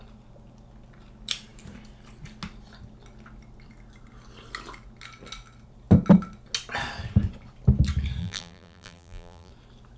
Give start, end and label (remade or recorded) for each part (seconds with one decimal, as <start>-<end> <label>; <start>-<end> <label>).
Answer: 0.0-8.2 recorded; 8.2-9.5 remade; 9.5-10.0 recorded